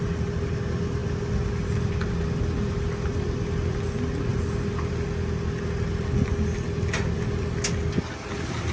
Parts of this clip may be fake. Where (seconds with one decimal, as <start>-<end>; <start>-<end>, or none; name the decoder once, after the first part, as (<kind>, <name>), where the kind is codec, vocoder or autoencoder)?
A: none